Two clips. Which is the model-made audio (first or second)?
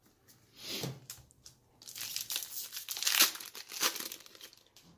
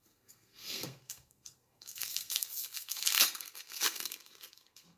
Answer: second